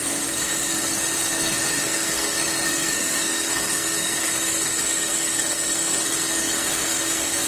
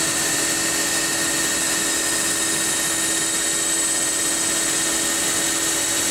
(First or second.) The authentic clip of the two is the second